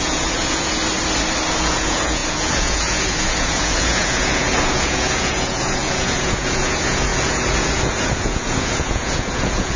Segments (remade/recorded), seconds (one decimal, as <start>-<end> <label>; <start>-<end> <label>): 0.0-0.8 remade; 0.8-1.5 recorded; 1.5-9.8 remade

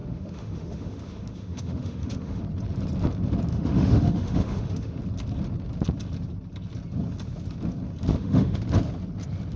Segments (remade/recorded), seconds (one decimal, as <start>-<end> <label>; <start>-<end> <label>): 0.0-2.4 remade; 2.4-3.5 recorded; 3.5-5.0 remade; 5.0-8.1 recorded; 8.1-8.6 remade; 8.6-9.6 recorded

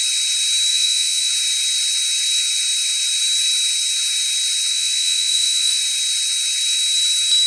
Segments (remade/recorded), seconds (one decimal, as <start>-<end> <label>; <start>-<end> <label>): 0.0-0.7 recorded; 0.7-1.3 remade; 1.3-4.7 recorded; 4.7-5.8 remade; 5.8-7.5 recorded